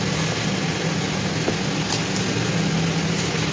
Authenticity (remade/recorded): recorded